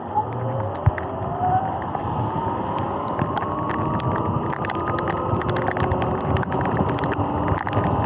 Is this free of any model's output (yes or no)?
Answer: yes